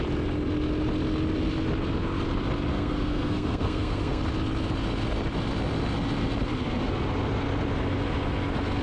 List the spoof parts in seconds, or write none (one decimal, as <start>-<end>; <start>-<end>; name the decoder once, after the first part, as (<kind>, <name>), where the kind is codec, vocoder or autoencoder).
2.7-4.2 (codec, SNAC)